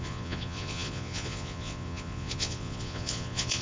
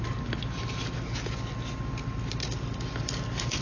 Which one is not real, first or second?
first